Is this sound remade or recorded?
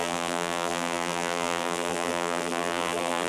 remade